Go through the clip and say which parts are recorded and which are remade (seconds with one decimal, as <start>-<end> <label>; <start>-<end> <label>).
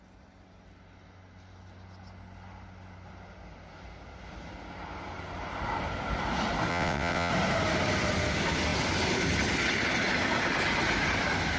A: 0.0-6.7 recorded; 6.7-7.3 remade; 7.3-11.6 recorded